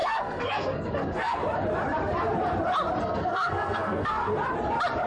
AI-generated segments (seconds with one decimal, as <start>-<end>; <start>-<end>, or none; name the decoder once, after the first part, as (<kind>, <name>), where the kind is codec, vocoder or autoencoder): 0.0-1.4 (codec, SNAC); 3.0-4.3